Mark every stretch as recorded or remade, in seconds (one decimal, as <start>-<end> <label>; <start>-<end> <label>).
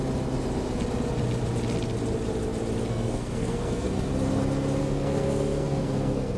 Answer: 0.0-2.9 recorded; 2.9-4.1 remade; 4.1-4.8 recorded; 4.8-6.4 remade